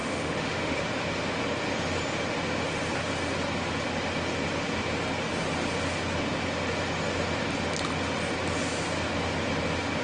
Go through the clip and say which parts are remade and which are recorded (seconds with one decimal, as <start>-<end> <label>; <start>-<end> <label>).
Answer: 0.0-0.8 remade; 0.8-10.0 recorded